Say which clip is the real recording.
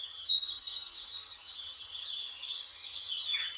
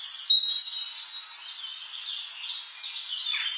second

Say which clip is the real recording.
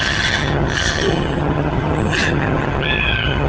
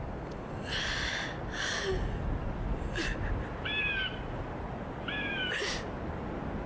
second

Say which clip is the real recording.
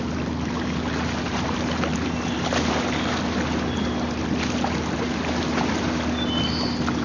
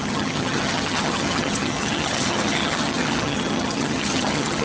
first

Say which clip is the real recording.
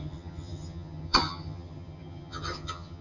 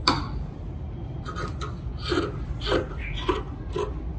second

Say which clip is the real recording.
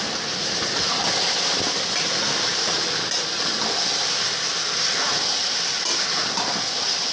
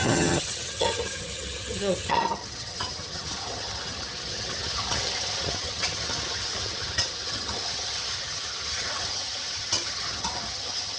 first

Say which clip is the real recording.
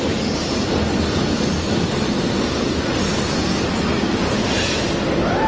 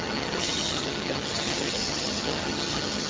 first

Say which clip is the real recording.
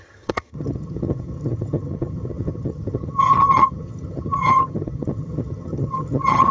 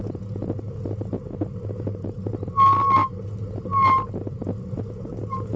second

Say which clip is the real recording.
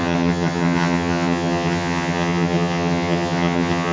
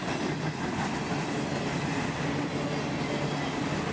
second